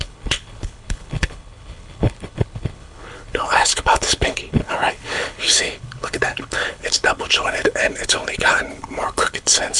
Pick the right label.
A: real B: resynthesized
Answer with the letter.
B